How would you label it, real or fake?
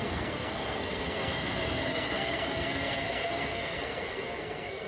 fake